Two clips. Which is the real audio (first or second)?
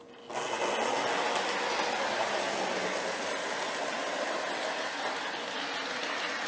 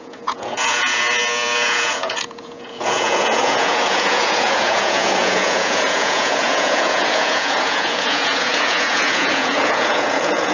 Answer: first